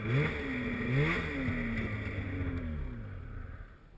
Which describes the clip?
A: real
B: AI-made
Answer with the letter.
A